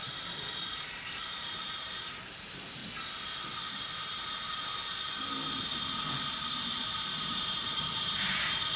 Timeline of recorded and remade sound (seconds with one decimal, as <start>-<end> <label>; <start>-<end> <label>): 0.0-2.8 remade; 2.8-6.2 recorded; 6.2-8.8 remade